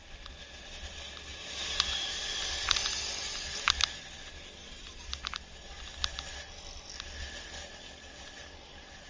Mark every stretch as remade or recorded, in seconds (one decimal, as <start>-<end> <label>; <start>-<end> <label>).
0.0-1.3 recorded; 1.3-2.2 remade; 2.2-9.1 recorded